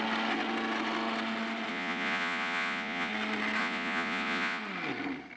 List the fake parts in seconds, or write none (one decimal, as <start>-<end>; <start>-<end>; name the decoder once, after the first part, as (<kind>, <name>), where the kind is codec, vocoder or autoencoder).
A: 1.7-3.1 (vocoder, Vocos); 3.6-4.6